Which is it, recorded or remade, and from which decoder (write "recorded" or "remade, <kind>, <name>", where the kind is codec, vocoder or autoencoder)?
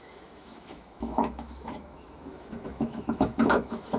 remade, autoencoder, DAC-VAE